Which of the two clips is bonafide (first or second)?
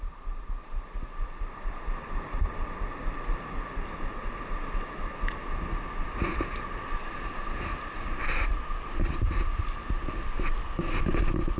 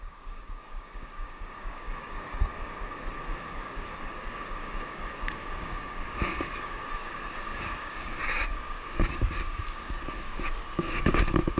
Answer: first